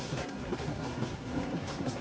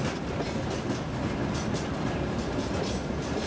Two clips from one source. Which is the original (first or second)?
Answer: second